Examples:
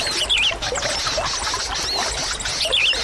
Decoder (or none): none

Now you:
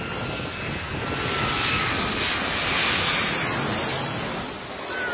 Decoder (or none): none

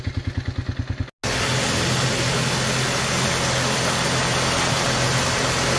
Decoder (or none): none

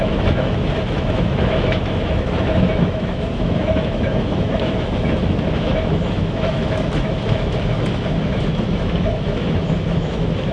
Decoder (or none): autoencoder, DAC-VAE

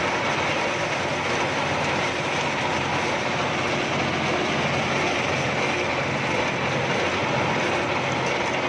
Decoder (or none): none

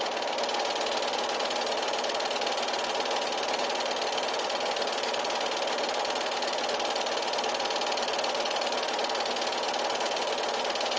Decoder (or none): none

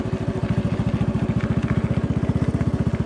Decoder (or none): none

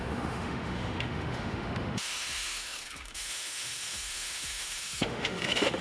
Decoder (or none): autoencoder, DAC-VAE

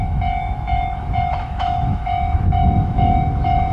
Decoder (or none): autoencoder, DAC-VAE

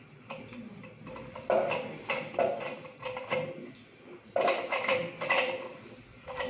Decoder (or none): none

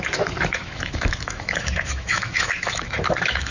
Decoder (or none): autoencoder, DAC-VAE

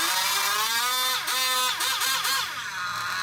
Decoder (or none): none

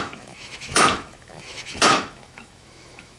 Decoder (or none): autoencoder, DAC-VAE